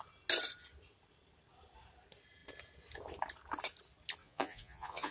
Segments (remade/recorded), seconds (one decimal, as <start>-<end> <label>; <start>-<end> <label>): 0.0-4.2 recorded; 4.2-5.1 remade